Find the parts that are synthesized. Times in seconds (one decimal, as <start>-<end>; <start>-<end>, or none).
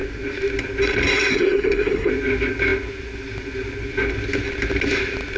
1.3-2.1